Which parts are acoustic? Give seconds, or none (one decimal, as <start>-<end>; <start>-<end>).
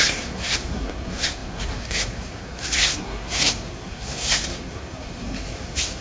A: none